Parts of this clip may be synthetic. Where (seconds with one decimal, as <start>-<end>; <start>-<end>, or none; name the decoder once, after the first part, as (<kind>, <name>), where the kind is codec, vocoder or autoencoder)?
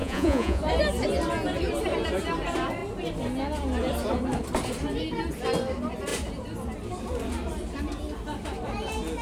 0.0-0.6 (vocoder, Vocos)